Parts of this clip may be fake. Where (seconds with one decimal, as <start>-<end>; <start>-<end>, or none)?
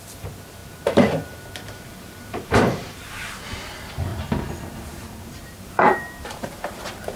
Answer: 0.6-3.1; 4.1-6.8